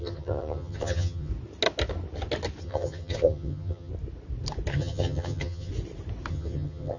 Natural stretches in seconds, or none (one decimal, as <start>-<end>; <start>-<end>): 1.3-2.6; 3.9-4.7; 5.7-6.3